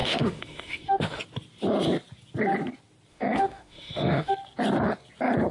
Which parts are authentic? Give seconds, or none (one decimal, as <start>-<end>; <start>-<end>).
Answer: 1.2-3.1; 4.3-5.5